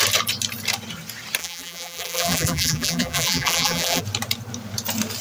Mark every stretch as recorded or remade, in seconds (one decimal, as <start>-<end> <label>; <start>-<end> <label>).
0.0-1.4 recorded; 1.4-4.0 remade; 4.0-5.2 recorded